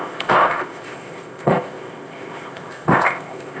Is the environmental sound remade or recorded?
remade